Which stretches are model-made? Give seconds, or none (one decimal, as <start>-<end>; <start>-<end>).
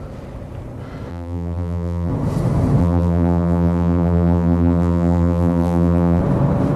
1.1-2.1; 2.8-6.2